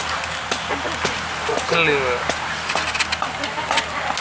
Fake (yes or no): no